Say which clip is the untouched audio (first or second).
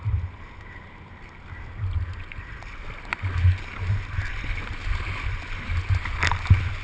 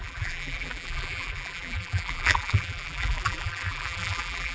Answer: first